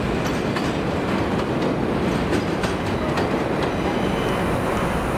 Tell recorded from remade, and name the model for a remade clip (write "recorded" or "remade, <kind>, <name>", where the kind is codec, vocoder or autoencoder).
recorded